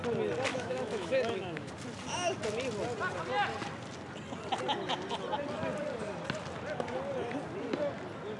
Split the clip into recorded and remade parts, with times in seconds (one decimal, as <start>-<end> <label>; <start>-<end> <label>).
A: 0.0-0.5 recorded; 0.5-1.7 remade; 1.7-8.4 recorded